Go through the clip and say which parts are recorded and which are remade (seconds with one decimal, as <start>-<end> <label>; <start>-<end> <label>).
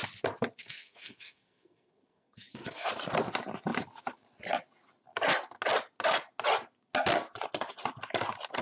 0.0-0.6 recorded; 0.6-2.9 remade; 2.9-8.6 recorded